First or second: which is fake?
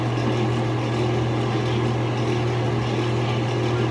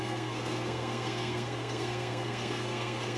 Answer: second